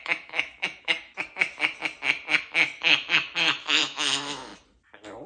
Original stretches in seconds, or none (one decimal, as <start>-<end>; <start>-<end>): 1.1-2.4; 4.5-5.3